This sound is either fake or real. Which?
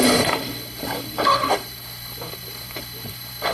fake